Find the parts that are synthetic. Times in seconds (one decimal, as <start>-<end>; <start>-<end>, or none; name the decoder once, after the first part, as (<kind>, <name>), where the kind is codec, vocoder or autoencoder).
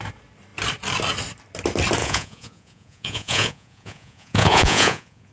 2.0-5.3 (vocoder, Vocos)